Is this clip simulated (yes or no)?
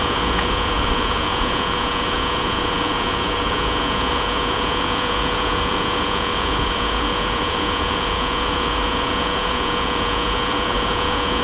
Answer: yes